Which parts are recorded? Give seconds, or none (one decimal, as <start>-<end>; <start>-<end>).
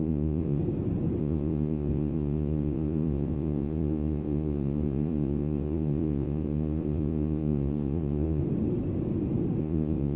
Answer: 0.6-1.2; 8.4-9.6